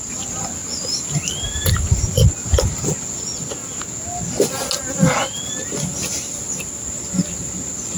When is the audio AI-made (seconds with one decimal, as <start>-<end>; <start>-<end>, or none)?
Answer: none